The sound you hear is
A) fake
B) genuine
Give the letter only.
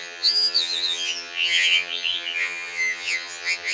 A